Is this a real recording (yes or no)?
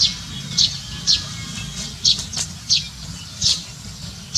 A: yes